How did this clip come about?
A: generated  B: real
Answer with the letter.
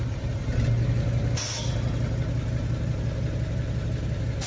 B